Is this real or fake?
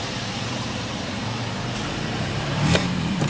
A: fake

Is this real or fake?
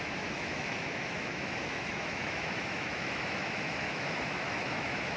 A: fake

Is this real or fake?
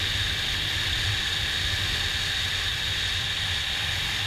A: real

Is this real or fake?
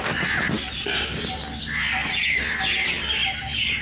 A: real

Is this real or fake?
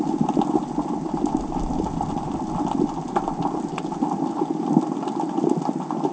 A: real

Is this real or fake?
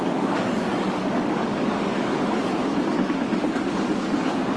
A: fake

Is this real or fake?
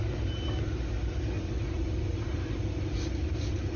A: real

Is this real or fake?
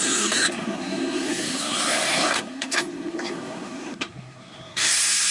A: fake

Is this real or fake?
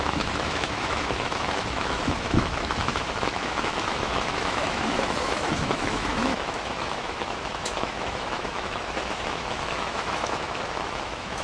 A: fake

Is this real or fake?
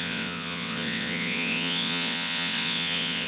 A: fake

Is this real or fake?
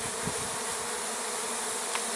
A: real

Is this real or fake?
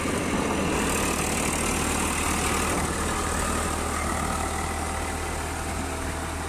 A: real